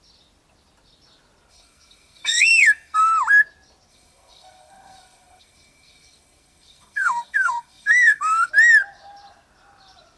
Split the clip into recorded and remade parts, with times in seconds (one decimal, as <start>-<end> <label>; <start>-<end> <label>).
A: 0.0-1.5 recorded; 1.5-3.1 remade; 3.1-3.9 recorded; 3.9-8.5 remade; 8.5-10.2 recorded